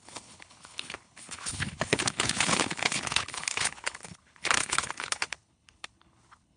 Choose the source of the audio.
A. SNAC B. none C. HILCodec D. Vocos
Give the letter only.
C